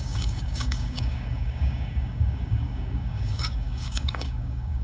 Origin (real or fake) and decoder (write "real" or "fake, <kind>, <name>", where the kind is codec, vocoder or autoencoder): fake, codec, DAC